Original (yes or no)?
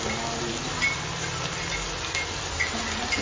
yes